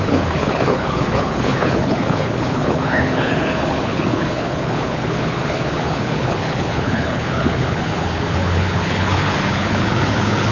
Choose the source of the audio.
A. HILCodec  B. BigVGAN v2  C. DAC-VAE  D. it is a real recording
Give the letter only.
A